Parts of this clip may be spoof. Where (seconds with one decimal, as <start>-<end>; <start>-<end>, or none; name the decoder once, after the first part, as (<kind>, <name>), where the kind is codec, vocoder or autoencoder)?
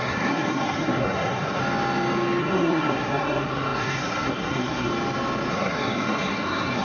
0.0-1.6 (codec, SNAC); 2.4-4.9; 5.5-6.8